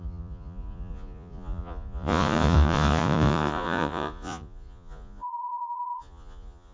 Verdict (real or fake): fake